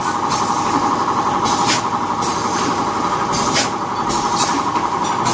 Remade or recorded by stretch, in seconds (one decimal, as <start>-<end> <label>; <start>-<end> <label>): 0.0-5.3 recorded